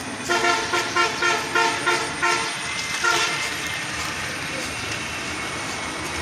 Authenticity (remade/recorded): recorded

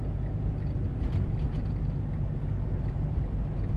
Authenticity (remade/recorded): recorded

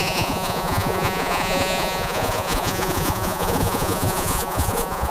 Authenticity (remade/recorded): remade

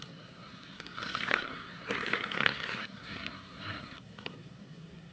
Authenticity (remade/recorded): remade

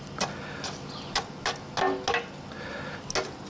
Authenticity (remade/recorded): recorded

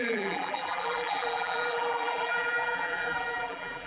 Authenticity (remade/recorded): remade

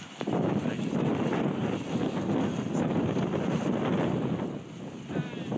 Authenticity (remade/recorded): recorded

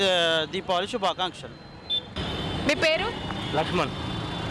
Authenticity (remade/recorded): recorded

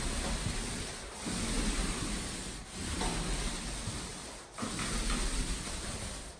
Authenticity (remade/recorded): recorded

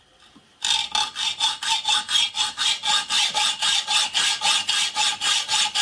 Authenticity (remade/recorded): recorded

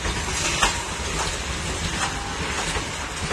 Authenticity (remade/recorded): recorded